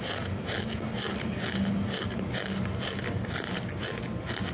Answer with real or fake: real